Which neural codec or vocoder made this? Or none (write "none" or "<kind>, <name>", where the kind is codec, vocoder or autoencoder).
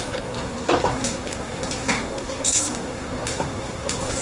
codec, SNAC